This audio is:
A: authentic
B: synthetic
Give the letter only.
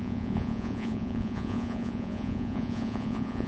B